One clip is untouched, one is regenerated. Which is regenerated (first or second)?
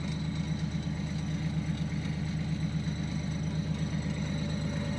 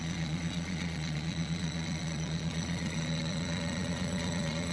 second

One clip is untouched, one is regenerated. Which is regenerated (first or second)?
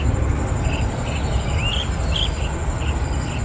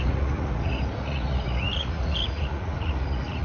second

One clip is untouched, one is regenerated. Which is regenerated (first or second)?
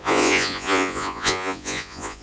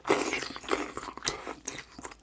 first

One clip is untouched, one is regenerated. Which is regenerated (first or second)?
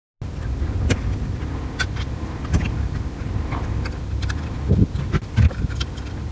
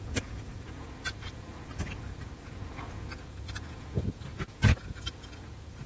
second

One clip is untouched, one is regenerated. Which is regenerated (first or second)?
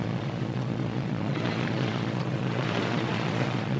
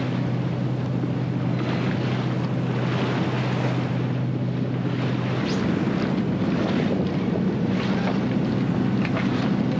first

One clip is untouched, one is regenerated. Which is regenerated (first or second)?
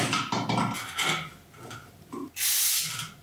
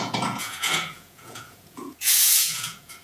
second